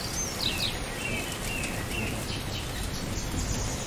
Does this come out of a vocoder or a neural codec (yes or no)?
no